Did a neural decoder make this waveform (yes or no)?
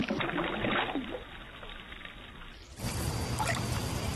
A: no